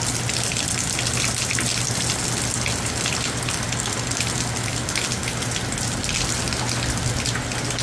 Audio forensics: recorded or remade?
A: recorded